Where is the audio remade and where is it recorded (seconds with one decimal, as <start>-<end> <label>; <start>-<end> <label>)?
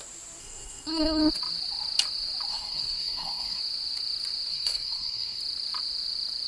0.0-0.4 recorded; 0.4-1.2 remade; 1.2-2.5 recorded; 2.5-3.6 remade; 3.6-4.5 recorded; 4.5-5.4 remade; 5.4-6.5 recorded